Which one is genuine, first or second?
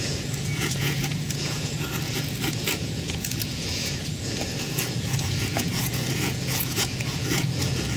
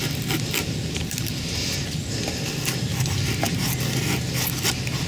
second